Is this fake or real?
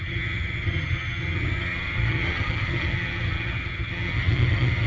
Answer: fake